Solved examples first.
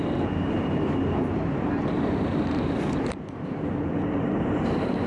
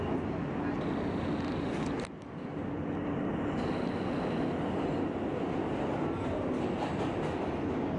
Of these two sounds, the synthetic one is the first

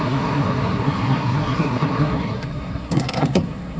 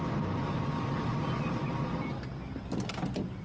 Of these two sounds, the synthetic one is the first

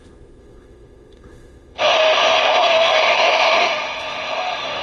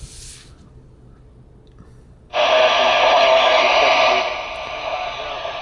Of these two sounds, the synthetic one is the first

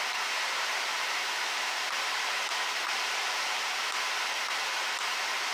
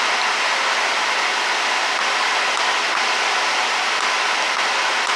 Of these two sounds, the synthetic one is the first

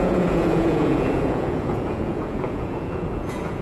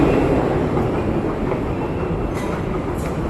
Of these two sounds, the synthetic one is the first